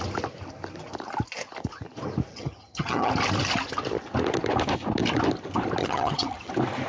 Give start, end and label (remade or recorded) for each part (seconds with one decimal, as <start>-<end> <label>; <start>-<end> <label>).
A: 0.0-2.3 recorded; 2.3-3.1 remade; 3.1-5.8 recorded; 5.8-6.5 remade; 6.5-6.9 recorded